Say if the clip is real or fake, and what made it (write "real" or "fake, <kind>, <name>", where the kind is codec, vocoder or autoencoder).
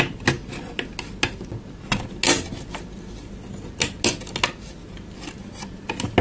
real